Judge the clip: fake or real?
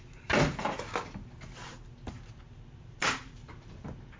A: real